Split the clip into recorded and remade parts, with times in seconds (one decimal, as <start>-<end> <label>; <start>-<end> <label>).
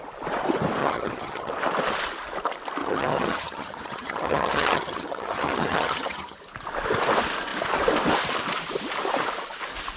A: 0.0-0.8 recorded; 0.8-1.5 remade; 1.5-2.8 recorded; 2.8-6.4 remade; 6.4-10.0 recorded